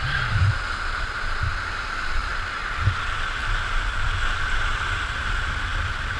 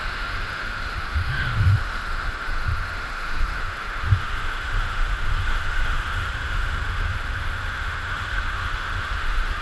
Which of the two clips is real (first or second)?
first